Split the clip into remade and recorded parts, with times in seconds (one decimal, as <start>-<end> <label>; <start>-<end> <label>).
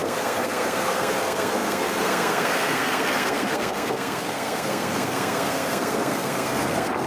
0.0-7.1 remade